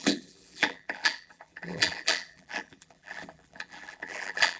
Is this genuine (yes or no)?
no